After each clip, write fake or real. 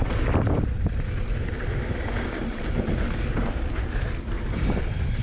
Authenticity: real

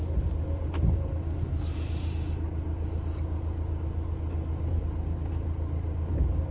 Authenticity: real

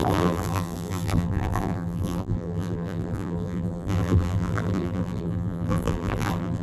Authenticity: fake